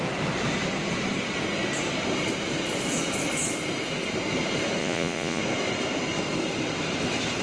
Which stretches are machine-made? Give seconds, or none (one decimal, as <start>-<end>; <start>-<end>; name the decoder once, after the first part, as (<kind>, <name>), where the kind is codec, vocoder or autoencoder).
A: 4.8-5.4 (vocoder, Vocos)